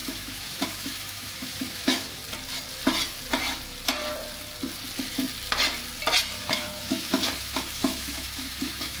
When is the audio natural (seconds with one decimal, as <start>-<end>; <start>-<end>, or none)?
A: 2.2-6.4